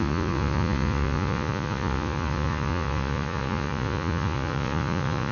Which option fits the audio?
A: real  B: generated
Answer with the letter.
B